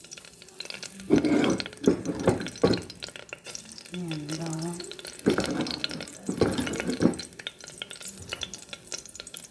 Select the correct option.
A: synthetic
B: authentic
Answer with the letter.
B